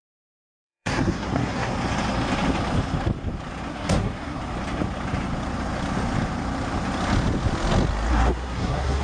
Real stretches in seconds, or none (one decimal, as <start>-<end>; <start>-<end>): 1.7-3.7; 4.4-8.1